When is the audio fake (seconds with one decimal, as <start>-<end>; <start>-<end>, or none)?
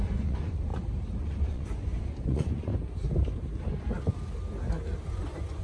0.0-0.7; 1.2-2.7; 5.1-5.6